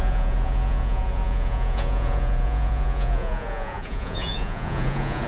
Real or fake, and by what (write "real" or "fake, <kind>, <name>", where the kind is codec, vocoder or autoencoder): fake, vocoder, Vocos